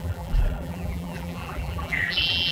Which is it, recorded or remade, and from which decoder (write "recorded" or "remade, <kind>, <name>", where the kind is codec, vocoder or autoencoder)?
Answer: remade, vocoder, BigVGAN v2